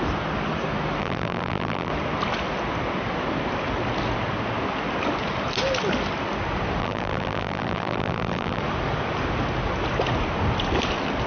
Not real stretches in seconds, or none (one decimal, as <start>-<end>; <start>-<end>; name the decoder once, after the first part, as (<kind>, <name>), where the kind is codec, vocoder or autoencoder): 1.0-1.9 (vocoder, BigVGAN v2); 6.8-8.6

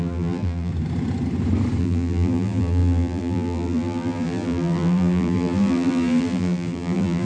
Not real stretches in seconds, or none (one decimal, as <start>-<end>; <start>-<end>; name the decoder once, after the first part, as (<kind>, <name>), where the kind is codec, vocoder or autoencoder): 0.0-0.7 (vocoder, BigVGAN v2); 1.8-7.2